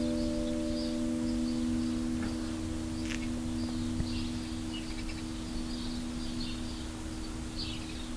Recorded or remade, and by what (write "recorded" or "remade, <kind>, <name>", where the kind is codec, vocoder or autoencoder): recorded